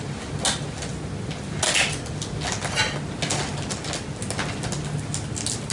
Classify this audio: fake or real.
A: real